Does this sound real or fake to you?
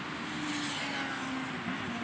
real